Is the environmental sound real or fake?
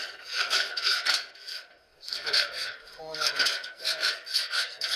fake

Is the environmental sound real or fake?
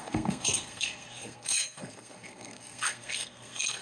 fake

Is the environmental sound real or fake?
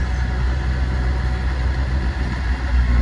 real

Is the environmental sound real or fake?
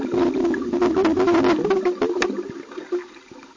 real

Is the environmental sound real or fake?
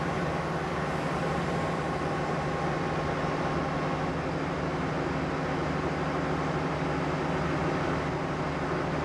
real